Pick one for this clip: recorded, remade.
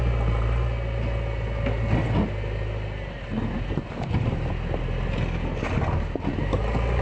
recorded